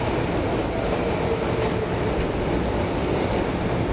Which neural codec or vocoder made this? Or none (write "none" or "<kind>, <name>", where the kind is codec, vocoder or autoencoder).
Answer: none